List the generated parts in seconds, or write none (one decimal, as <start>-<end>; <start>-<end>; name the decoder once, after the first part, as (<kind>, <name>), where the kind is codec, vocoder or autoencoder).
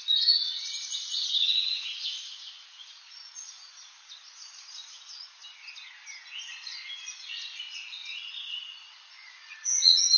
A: 0.0-5.4 (vocoder, Vocos); 6.5-8.2; 8.8-10.2